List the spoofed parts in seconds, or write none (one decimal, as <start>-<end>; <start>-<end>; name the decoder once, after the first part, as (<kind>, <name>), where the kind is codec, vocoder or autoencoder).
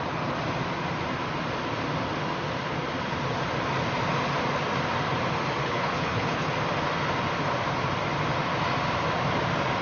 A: 5.6-6.5 (codec, HILCodec)